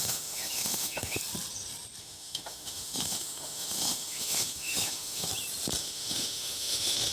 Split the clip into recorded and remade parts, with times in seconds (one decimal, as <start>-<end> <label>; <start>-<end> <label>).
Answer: 0.0-1.2 remade; 1.2-2.0 recorded; 2.0-5.3 remade; 5.3-5.8 recorded; 5.8-7.1 remade